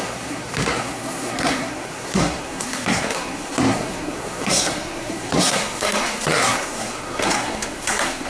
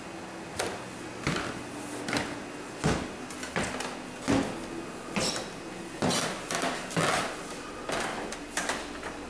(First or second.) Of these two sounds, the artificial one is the first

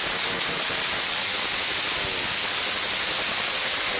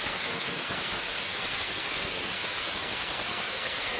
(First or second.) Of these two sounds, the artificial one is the second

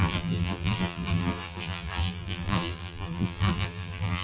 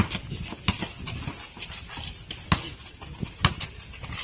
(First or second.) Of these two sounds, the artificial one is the first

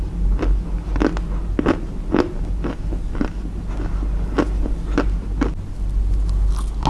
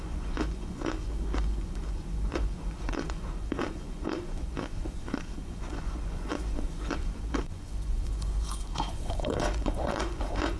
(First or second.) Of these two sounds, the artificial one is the second